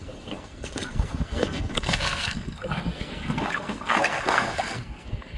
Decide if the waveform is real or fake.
fake